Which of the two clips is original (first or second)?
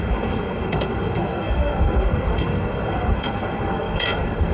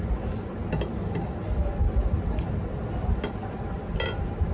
second